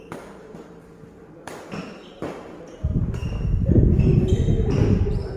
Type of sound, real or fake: fake